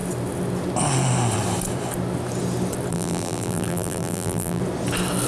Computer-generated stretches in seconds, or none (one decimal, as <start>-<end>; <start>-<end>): 2.9-4.6